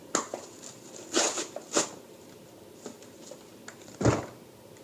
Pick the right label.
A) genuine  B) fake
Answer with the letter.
A